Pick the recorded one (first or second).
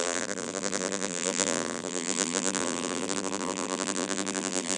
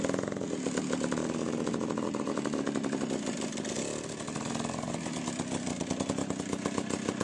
second